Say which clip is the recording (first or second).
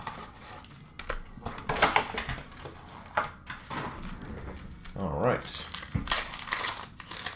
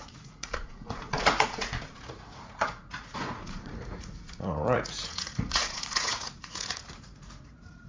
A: first